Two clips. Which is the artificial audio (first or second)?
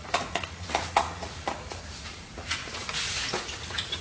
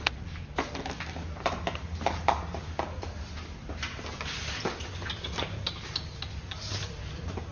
first